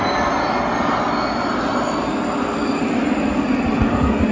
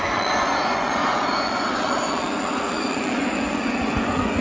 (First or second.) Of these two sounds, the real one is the first